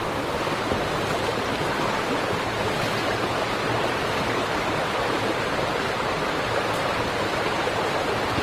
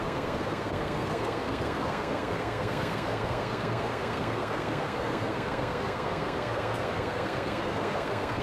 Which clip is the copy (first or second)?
second